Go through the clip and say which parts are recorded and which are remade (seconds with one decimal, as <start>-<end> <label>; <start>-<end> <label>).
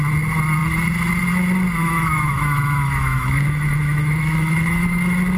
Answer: 0.0-1.8 recorded; 1.8-5.0 remade; 5.0-5.4 recorded